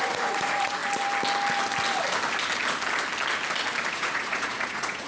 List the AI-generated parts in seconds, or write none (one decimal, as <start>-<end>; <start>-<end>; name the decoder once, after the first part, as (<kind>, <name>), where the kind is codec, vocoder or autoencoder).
0.0-0.8 (vocoder, Vocos); 3.9-5.1